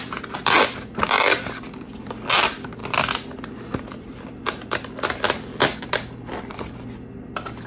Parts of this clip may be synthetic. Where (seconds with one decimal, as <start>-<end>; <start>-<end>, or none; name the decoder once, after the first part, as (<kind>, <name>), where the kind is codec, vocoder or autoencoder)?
none